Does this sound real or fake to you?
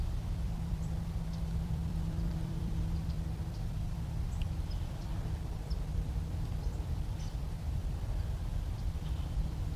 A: fake